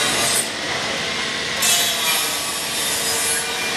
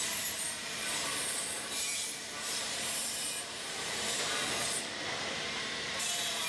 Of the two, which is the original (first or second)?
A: first